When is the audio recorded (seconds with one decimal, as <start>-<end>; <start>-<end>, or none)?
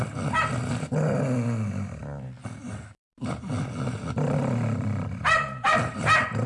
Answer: 0.0-6.5